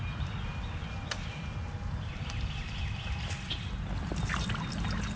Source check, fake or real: real